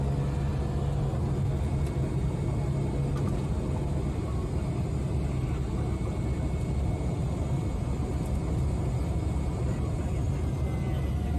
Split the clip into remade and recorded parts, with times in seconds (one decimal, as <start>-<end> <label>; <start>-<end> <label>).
0.0-11.4 recorded